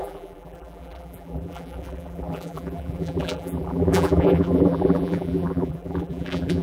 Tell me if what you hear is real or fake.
fake